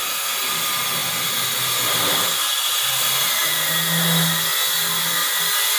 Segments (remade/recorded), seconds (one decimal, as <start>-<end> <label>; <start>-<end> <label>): 0.0-5.8 recorded